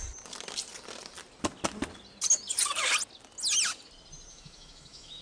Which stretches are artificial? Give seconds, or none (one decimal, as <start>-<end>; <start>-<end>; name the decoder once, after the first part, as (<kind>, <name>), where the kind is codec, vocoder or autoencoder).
4.3-5.2 (autoencoder, DAC-VAE)